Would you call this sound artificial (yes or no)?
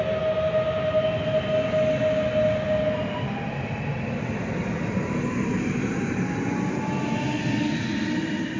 no